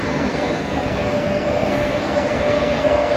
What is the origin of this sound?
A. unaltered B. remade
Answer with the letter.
B